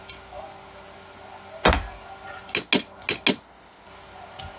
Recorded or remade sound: recorded